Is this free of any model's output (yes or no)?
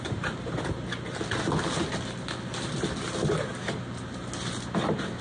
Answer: yes